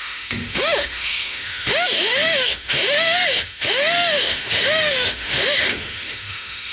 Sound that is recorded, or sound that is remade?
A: remade